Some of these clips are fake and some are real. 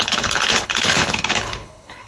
fake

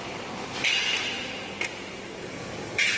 real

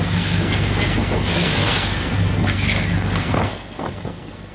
fake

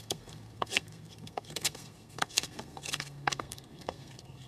fake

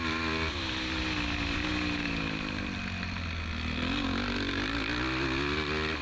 real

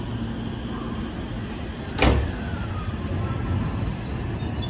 real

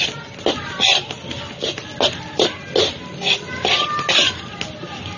real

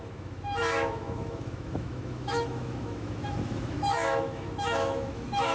fake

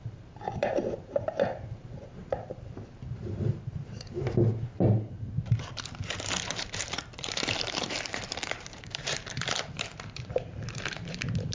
fake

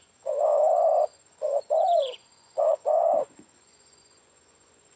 fake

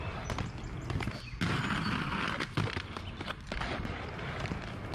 real